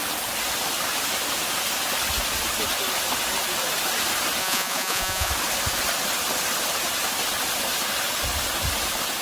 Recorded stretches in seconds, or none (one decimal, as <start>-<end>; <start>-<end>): 0.0-4.4; 5.3-9.2